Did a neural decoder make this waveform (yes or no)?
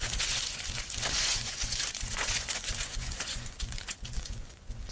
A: yes